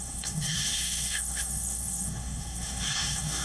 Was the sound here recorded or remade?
remade